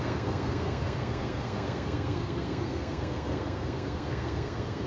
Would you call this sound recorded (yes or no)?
no